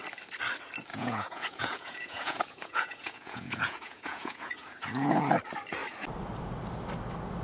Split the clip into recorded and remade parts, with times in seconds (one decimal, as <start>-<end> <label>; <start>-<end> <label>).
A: 0.0-0.9 recorded; 0.9-5.3 remade; 5.3-7.4 recorded